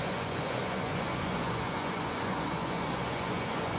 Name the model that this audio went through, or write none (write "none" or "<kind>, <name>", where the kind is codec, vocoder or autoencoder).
vocoder, Vocos